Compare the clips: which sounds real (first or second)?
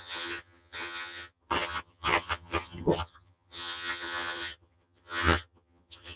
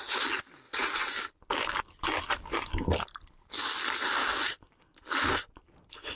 second